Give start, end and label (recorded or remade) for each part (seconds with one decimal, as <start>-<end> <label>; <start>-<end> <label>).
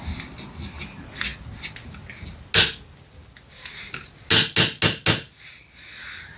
0.0-6.4 recorded